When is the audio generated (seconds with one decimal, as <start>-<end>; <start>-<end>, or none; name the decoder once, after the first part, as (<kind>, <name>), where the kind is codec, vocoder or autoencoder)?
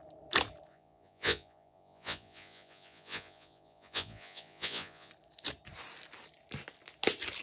0.7-5.1 (vocoder, Vocos)